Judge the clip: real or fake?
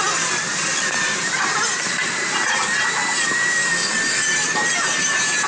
fake